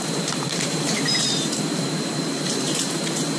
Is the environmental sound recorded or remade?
remade